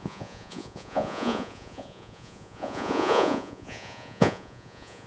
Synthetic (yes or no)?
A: yes